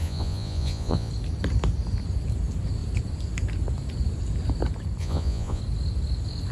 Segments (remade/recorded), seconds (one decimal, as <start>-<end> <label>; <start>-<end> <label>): 0.0-1.1 remade; 1.1-5.0 recorded; 5.0-5.6 remade; 5.6-6.5 recorded